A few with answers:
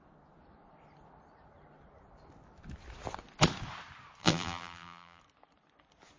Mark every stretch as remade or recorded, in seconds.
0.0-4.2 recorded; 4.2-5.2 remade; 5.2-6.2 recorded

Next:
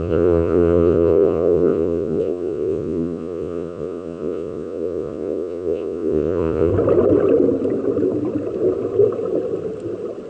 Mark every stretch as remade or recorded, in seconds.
0.0-6.7 remade; 6.7-10.3 recorded

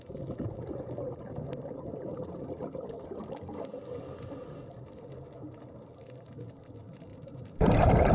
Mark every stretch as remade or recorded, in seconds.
0.0-7.1 recorded; 7.1-8.1 remade

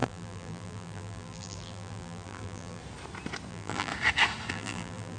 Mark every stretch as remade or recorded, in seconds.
0.0-2.8 remade; 2.8-3.5 recorded; 3.5-3.9 remade; 3.9-4.5 recorded; 4.5-5.2 remade

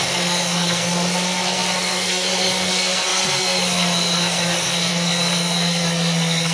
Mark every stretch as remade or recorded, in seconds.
0.0-6.5 remade

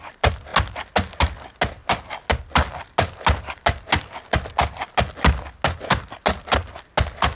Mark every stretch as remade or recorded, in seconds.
0.0-7.4 recorded

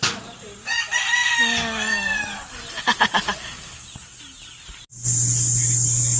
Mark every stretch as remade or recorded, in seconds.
0.0-6.2 recorded